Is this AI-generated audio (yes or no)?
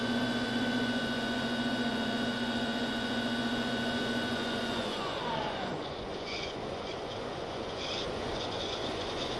yes